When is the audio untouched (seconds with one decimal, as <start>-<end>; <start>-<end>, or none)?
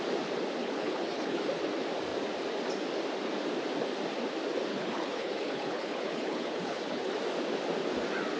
0.0-0.6; 1.4-4.7; 7.1-8.4